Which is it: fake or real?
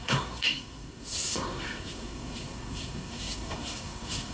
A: fake